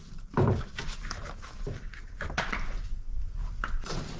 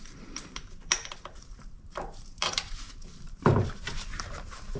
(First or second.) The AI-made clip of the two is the second